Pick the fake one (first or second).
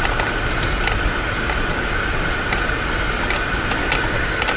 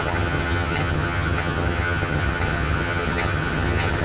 second